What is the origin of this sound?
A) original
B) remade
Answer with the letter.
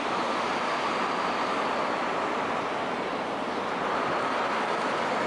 A